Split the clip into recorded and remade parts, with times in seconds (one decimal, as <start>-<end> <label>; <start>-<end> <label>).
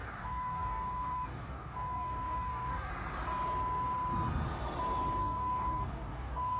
0.0-2.9 remade; 2.9-5.2 recorded; 5.2-6.6 remade